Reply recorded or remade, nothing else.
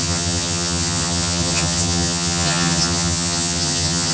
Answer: remade